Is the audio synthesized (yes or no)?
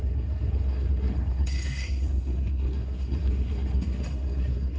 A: yes